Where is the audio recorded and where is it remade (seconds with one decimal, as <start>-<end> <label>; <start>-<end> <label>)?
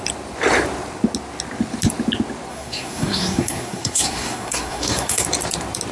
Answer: 0.0-2.5 recorded; 2.5-5.2 remade; 5.2-5.9 recorded